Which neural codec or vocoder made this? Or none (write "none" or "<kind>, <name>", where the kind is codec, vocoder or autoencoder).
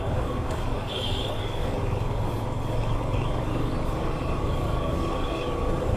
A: codec, DAC